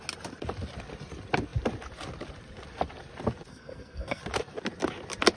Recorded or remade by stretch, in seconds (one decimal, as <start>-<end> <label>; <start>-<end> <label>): 0.0-3.5 recorded; 3.5-4.2 remade; 4.2-5.4 recorded